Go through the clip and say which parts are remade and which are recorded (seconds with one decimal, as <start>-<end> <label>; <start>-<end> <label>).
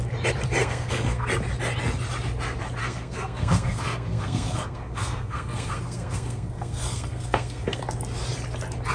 0.0-0.6 recorded; 0.6-1.3 remade; 1.3-2.8 recorded; 2.8-7.8 remade; 7.8-8.9 recorded